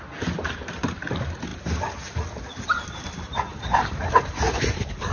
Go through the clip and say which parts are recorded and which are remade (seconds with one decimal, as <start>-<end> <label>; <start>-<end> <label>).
0.0-3.5 recorded; 3.5-4.6 remade; 4.6-5.1 recorded